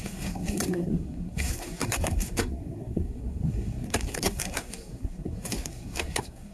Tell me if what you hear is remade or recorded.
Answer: remade